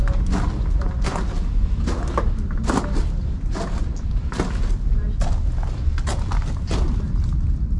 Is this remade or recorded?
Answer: recorded